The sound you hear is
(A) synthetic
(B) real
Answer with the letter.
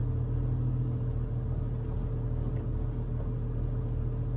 B